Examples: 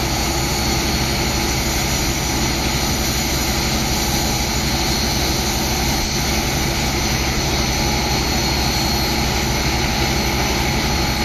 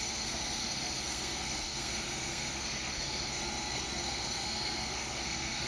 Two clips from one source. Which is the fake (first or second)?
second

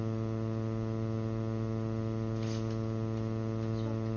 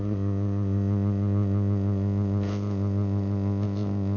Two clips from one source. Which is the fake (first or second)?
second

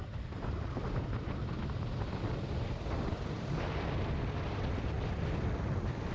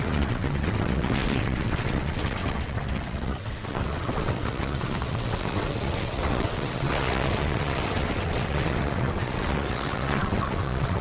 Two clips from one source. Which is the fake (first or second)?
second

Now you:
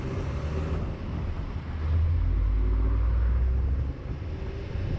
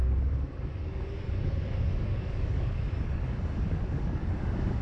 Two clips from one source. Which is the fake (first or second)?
second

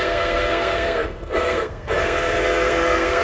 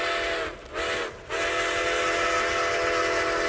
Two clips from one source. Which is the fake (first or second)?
first